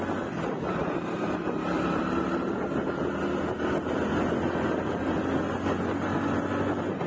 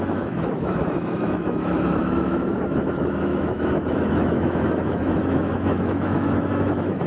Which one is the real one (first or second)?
first